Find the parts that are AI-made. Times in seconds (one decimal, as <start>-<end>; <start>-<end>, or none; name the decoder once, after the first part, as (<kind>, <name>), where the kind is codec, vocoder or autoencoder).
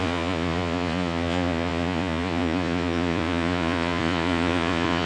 0.0-5.1 (vocoder, Vocos)